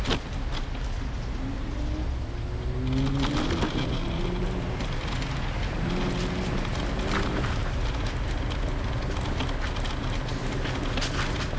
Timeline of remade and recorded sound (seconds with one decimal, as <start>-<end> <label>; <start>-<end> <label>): 0.0-11.6 recorded